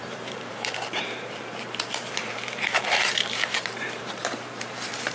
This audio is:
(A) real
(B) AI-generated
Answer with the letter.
B